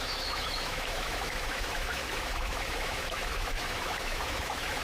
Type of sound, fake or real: fake